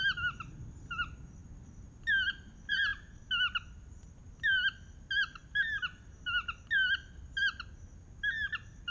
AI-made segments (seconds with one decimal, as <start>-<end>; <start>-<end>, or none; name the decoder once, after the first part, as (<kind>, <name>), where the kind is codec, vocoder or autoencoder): none